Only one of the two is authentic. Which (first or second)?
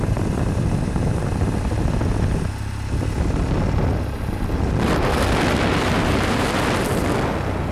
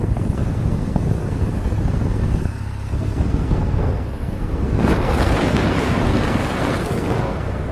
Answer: first